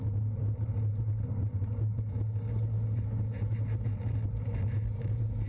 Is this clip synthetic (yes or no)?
no